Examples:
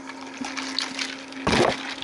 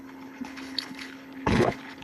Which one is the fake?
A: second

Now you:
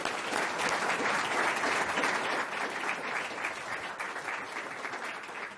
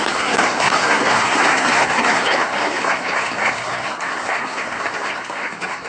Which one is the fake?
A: second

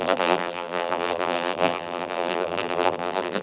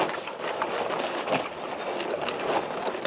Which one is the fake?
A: first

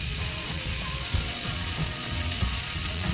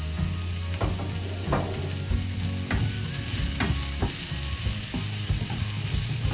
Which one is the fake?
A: first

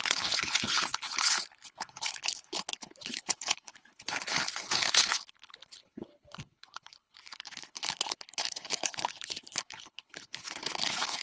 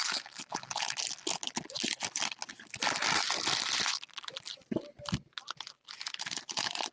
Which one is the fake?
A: first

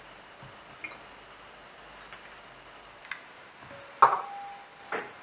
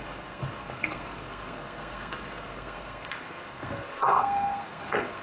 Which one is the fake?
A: second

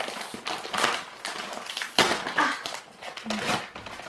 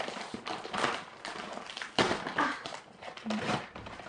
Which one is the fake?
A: second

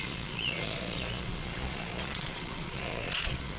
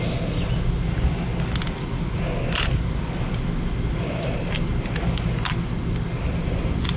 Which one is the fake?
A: first